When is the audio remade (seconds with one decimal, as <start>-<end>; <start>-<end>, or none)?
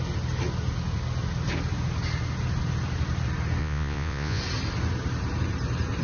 3.6-4.4